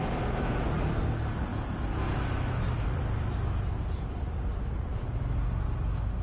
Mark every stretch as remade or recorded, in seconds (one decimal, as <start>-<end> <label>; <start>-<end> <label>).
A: 0.0-6.2 recorded